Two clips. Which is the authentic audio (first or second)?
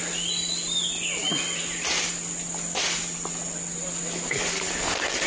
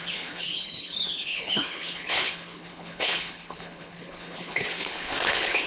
first